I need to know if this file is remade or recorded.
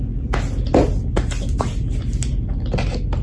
recorded